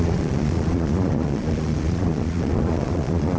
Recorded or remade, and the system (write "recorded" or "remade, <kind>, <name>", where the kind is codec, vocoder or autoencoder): remade, vocoder, Vocos